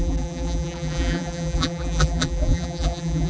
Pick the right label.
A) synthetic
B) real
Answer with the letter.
A